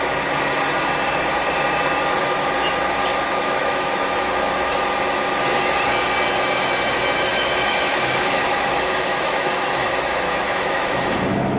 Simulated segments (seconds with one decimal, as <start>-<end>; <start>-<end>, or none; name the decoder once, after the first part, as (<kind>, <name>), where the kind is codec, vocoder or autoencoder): 3.1-4.8 (autoencoder, DAC-VAE); 7.3-11.6